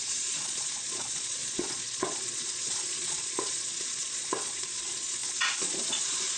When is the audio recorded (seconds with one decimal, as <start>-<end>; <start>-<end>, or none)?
none